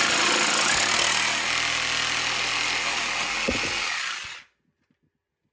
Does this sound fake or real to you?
real